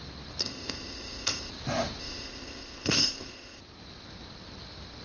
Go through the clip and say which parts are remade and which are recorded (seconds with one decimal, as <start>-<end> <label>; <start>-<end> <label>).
0.0-0.4 recorded; 0.4-1.5 remade; 1.5-2.0 recorded; 2.0-3.6 remade; 3.6-5.0 recorded